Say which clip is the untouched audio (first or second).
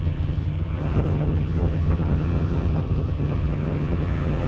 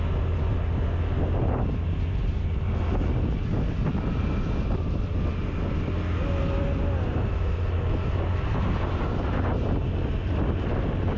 second